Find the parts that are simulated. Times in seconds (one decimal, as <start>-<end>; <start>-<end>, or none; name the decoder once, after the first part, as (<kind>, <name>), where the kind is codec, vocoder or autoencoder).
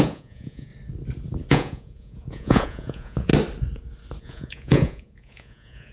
0.0-0.7 (vocoder, Vocos); 1.5-3.3; 4.2-5.9